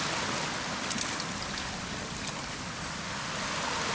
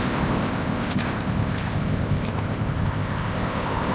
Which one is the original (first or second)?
first